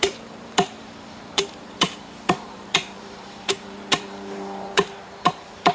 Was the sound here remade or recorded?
remade